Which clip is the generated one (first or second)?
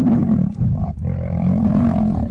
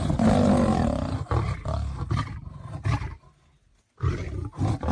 first